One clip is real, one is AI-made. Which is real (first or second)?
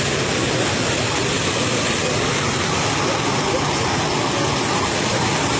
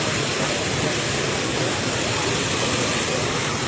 first